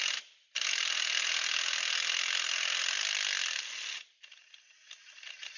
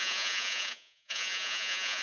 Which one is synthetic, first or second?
second